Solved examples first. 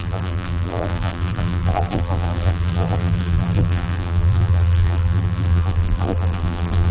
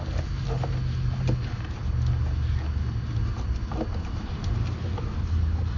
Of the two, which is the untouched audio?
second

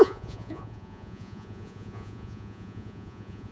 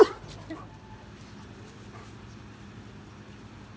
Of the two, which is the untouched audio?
second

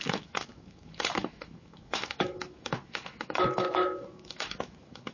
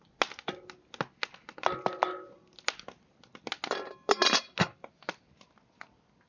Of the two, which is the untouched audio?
second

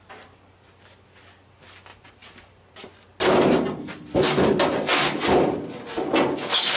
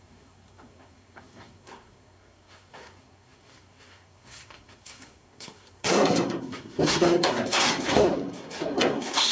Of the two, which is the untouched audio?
first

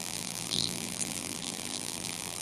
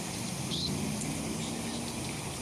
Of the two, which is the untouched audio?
second